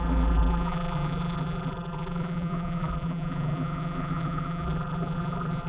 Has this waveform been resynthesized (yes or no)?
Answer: yes